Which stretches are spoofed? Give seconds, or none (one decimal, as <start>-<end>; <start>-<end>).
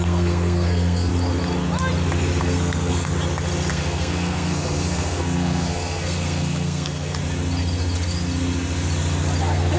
0.0-1.1; 2.4-3.1; 3.7-7.2; 9.4-9.8